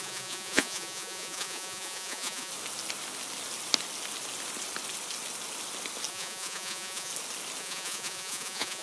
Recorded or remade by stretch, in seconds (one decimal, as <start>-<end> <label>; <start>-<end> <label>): 0.0-2.5 remade; 2.5-6.1 recorded; 6.1-7.1 remade; 7.1-7.6 recorded; 7.6-8.8 remade